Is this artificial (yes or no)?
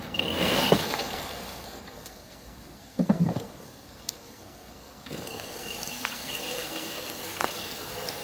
yes